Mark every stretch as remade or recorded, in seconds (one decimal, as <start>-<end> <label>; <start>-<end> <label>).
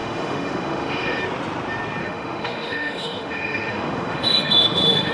0.0-1.2 remade; 1.2-2.0 recorded; 2.0-5.1 remade